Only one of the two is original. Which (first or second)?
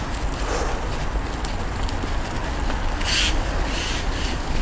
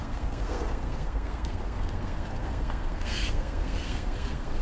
first